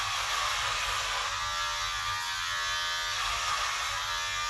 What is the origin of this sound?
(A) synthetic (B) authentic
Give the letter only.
B